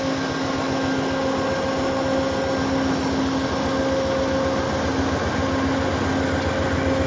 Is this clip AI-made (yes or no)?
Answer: no